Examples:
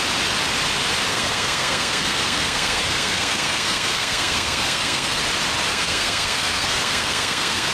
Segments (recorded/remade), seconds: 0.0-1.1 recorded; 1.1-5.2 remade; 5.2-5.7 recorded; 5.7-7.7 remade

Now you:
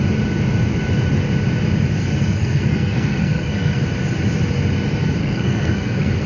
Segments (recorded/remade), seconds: 0.0-2.0 recorded; 2.0-3.8 remade; 3.8-5.2 recorded; 5.2-6.3 remade

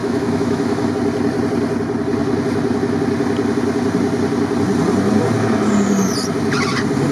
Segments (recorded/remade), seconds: 0.0-0.9 remade; 0.9-7.1 recorded

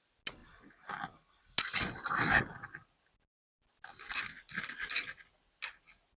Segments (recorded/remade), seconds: 0.0-6.2 recorded

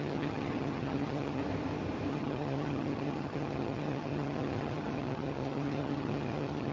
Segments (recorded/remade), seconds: 0.0-1.4 remade; 1.4-2.1 recorded; 2.1-6.7 remade